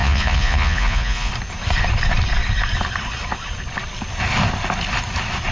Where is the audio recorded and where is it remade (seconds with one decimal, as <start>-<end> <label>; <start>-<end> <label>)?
0.0-1.3 remade; 1.3-5.5 recorded